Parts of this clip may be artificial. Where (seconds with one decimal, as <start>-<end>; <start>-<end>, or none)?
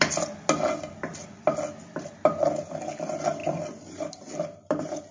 none